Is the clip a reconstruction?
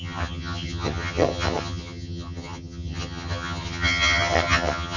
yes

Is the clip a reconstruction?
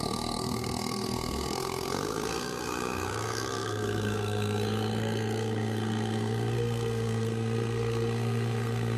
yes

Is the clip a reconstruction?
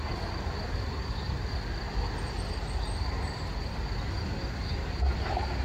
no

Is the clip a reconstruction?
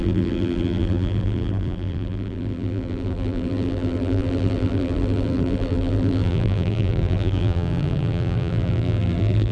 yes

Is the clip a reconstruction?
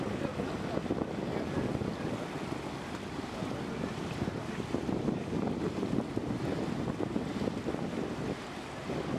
no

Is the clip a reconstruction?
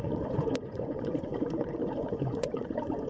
yes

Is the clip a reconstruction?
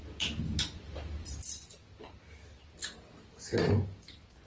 no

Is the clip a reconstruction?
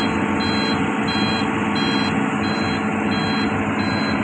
no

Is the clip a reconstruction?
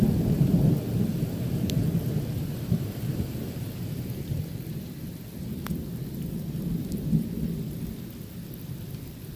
no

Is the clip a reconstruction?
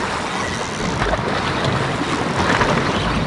no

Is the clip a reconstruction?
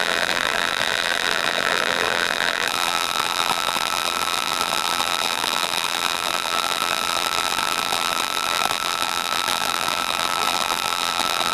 yes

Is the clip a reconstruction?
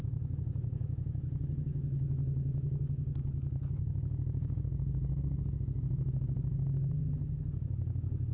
yes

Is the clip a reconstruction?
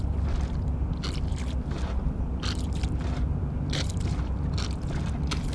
no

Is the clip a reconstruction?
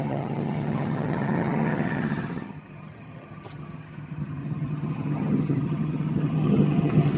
yes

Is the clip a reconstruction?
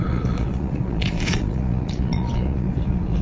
yes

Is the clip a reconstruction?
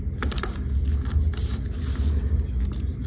no